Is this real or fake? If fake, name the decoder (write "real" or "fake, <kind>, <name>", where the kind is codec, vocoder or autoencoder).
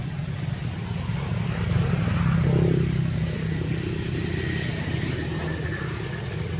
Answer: real